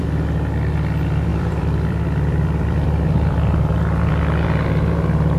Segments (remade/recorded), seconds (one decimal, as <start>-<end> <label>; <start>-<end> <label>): 0.0-1.3 recorded; 1.3-4.1 remade; 4.1-5.4 recorded